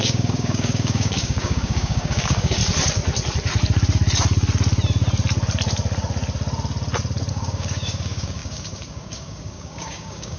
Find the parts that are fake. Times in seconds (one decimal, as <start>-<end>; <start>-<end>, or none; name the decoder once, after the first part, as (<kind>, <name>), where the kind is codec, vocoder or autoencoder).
0.0-2.6 (codec, DAC); 7.3-10.4